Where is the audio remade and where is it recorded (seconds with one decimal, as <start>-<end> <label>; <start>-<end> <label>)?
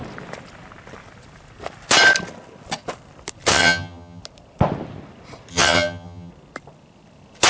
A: 0.0-3.5 recorded; 3.5-4.2 remade; 4.2-5.5 recorded; 5.5-6.3 remade; 6.3-7.5 recorded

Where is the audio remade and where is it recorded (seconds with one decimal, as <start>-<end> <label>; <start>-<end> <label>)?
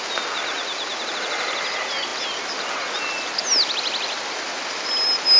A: 0.0-5.4 recorded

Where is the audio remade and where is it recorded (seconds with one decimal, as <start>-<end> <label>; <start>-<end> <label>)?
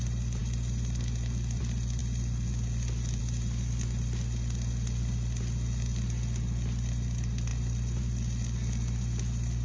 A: 0.0-9.6 recorded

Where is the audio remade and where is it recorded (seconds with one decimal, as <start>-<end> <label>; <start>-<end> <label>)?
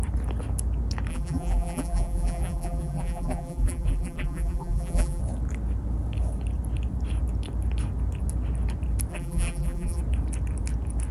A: 0.0-1.1 recorded; 1.1-5.2 remade; 5.2-9.1 recorded; 9.1-10.0 remade; 10.0-11.1 recorded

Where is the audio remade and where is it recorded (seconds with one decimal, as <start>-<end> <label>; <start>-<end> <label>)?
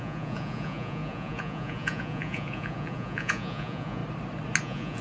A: 0.0-4.0 remade; 4.0-4.6 recorded; 4.6-5.0 remade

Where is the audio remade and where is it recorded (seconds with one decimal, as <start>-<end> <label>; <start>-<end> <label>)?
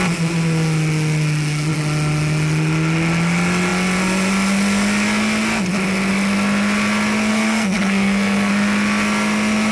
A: 0.0-7.3 recorded; 7.3-8.5 remade; 8.5-9.7 recorded